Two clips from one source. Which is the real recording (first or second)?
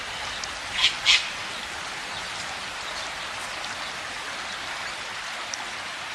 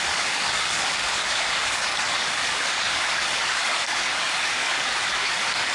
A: first